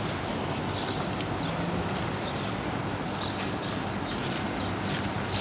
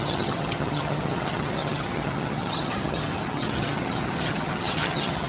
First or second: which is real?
first